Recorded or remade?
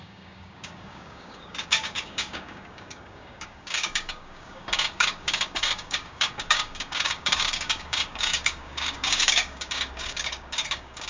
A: remade